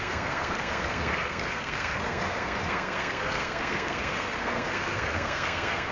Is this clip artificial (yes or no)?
yes